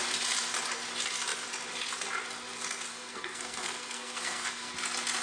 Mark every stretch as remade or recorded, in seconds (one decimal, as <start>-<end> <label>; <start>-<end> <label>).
0.0-2.9 recorded; 2.9-4.7 remade; 4.7-5.2 recorded